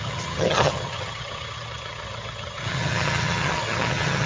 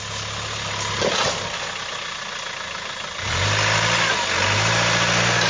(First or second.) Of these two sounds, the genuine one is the second